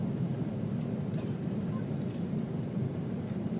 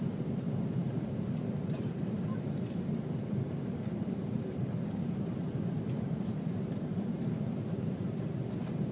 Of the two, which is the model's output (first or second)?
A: second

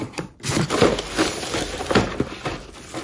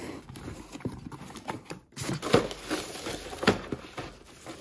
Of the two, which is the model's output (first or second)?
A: first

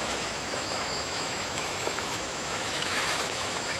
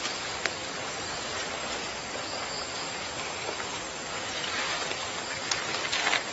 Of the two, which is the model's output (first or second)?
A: first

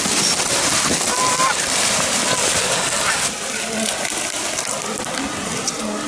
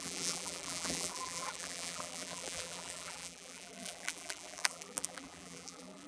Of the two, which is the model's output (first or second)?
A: second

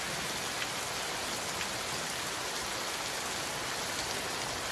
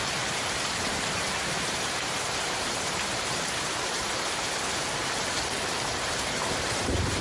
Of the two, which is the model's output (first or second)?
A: second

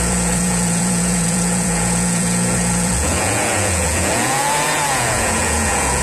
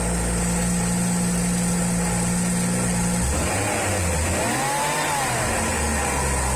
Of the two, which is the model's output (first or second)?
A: first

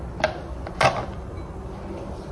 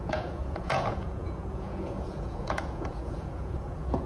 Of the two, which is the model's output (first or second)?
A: second